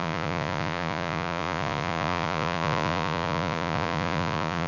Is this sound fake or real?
fake